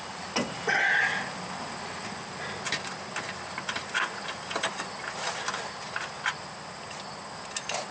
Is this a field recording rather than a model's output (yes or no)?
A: yes